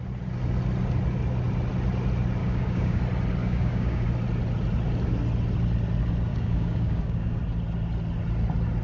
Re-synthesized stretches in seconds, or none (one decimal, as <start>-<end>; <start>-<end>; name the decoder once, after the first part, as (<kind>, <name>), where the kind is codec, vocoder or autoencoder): 2.4-3.0 (codec, DAC); 3.4-4.1; 6.3-7.4